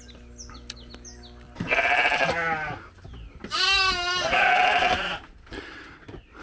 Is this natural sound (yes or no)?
yes